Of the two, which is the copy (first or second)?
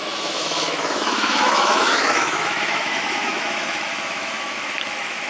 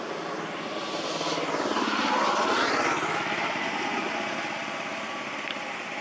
first